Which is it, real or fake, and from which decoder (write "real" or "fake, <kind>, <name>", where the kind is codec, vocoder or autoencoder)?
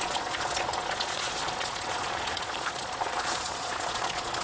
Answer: fake, vocoder, Vocos